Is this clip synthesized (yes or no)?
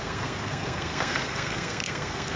yes